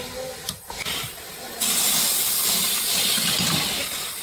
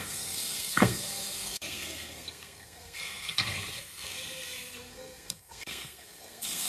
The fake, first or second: second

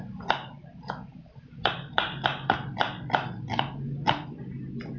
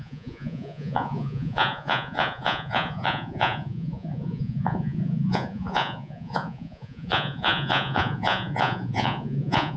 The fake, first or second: second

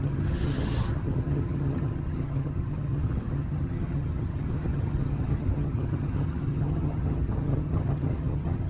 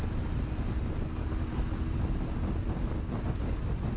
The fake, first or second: first